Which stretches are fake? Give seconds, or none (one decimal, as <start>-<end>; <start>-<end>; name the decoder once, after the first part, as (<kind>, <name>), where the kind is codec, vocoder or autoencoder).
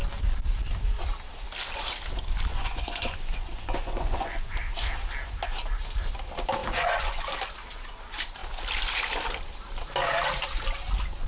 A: 2.5-4.9 (vocoder, Vocos); 6.6-7.2